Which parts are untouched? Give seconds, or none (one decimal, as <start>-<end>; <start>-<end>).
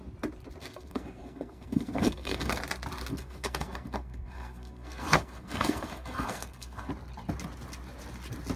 0.0-0.6; 2.6-3.1; 6.9-8.6